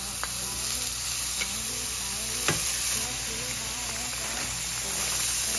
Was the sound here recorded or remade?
recorded